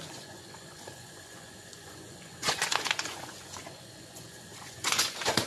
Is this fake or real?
fake